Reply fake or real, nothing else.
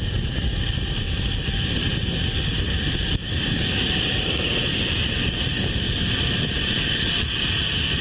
fake